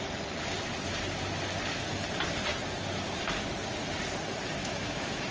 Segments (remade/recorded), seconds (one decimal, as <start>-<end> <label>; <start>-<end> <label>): 0.0-4.6 recorded; 4.6-5.3 remade